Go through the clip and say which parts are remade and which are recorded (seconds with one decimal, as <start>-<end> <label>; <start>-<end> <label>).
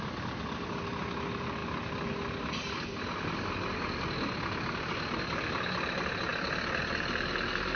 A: 0.0-7.8 recorded